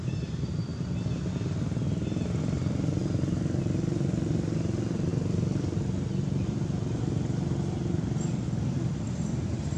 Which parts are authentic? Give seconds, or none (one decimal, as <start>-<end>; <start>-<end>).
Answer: 0.0-9.8